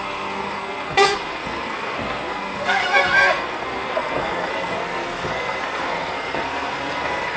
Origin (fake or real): fake